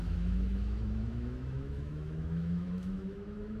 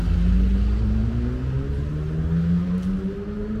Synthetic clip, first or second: first